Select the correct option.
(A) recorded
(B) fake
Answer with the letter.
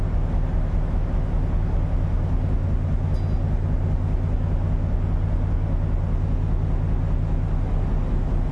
A